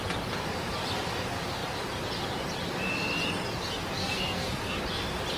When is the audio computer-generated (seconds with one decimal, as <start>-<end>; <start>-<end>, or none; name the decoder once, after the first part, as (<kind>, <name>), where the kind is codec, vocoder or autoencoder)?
4.0-4.8 (codec, SNAC)